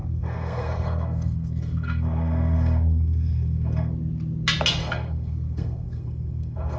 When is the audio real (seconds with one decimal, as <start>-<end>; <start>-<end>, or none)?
3.9-4.8